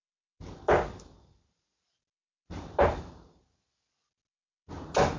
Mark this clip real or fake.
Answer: real